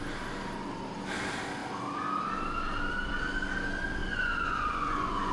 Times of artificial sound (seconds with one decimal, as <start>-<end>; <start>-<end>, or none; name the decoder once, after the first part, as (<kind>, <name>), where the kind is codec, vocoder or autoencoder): 4.0-5.3 (vocoder, Vocos)

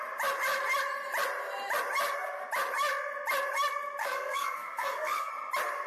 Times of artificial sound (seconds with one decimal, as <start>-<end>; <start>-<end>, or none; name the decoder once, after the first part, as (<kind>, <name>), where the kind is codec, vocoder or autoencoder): 4.0-5.3 (codec, SNAC)

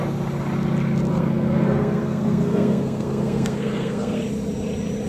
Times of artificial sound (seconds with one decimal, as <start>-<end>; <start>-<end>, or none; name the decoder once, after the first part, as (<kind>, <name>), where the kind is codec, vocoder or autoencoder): 1.1-4.2 (codec, SNAC)

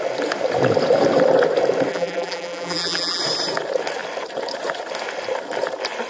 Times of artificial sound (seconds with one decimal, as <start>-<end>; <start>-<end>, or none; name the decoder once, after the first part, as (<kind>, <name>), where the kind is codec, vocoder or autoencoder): 1.9-3.2 (vocoder, BigVGAN v2)

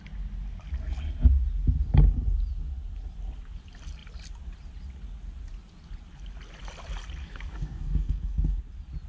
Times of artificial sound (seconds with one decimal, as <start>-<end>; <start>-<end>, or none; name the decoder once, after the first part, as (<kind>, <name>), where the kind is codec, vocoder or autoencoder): 7.2-8.6 (codec, SNAC)

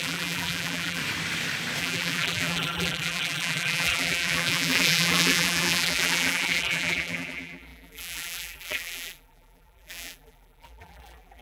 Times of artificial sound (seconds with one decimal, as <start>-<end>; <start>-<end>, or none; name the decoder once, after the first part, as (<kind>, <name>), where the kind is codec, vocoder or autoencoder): 0.0-1.0 (vocoder, BigVGAN v2); 1.8-11.4

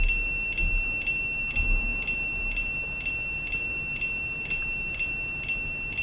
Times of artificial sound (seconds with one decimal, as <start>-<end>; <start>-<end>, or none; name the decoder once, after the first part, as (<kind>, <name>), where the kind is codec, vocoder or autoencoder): none

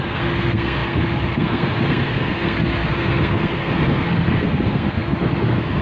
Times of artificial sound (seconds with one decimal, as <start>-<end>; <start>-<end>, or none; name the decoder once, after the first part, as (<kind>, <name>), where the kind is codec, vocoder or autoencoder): 0.0-5.8 (codec, SNAC)